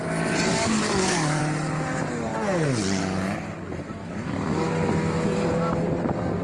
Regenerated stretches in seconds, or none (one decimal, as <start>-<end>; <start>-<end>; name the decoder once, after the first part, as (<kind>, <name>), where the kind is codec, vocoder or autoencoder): 0.5-1.4 (codec, DAC); 4.0-4.7